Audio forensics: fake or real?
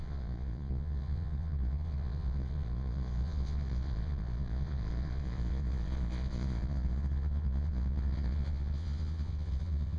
fake